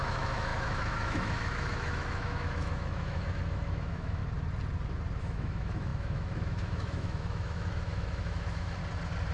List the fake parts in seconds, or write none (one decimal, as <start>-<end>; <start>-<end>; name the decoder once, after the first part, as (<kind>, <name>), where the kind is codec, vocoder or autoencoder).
0.0-4.2 (autoencoder, DAC-VAE); 5.2-8.8